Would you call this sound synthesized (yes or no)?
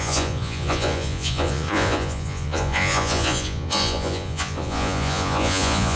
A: yes